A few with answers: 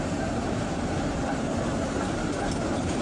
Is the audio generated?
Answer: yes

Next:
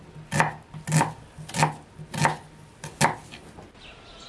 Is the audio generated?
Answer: no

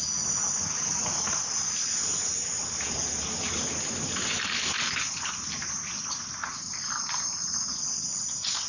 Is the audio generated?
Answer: no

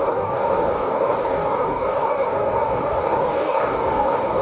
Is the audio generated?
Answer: yes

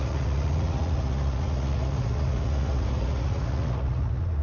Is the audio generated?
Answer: yes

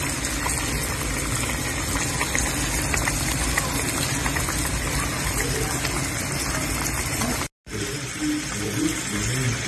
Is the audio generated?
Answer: no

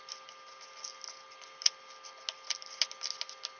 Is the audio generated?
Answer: no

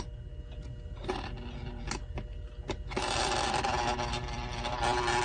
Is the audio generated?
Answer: no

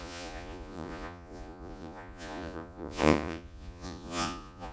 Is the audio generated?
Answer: yes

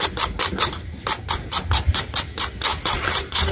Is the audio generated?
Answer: no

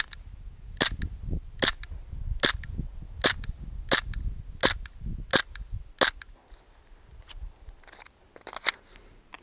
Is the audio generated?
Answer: no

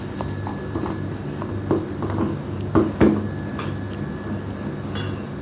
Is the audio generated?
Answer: no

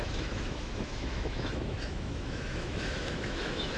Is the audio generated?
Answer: yes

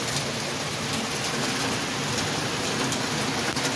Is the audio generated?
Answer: no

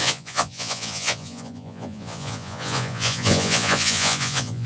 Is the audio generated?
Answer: yes